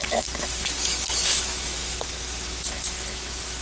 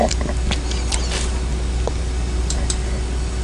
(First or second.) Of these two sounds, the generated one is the first